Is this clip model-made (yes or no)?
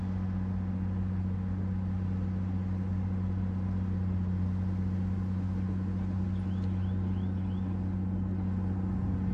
no